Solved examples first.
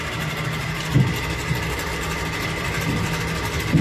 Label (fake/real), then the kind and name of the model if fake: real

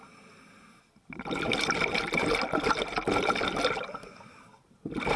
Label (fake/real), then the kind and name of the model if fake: real